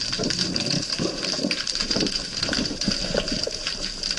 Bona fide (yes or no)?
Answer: no